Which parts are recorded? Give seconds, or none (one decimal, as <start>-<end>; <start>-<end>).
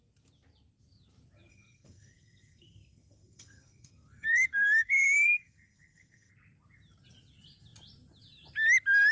0.0-1.5; 6.3-9.1